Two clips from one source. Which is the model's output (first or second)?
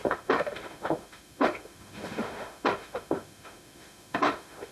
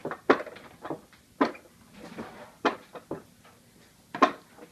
first